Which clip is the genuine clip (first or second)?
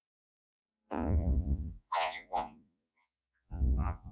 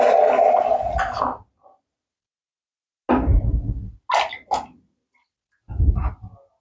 second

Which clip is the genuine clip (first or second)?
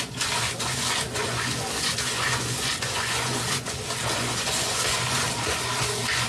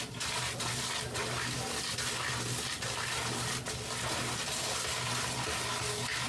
second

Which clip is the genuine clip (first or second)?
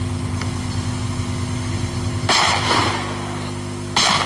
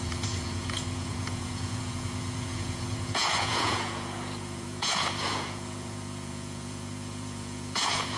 first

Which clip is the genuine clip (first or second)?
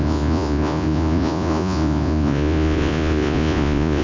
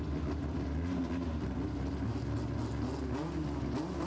second